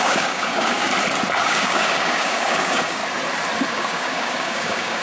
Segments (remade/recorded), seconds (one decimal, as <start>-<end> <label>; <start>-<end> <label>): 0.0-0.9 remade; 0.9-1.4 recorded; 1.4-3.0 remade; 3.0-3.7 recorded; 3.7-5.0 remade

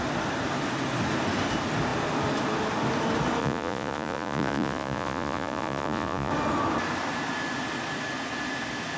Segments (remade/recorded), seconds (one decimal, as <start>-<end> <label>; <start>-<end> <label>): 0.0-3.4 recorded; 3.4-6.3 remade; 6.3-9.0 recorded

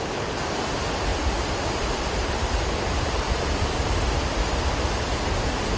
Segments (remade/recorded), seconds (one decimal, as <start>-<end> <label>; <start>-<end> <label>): 0.0-5.8 recorded

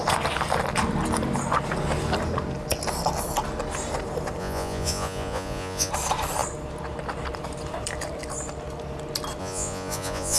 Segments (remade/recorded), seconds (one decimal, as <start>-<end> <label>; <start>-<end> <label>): 0.0-4.4 recorded; 4.4-5.9 remade; 5.9-9.4 recorded; 9.4-10.4 remade